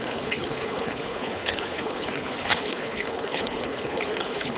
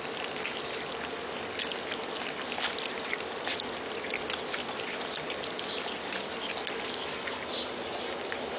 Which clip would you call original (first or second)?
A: second